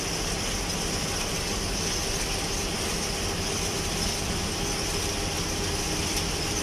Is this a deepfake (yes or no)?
no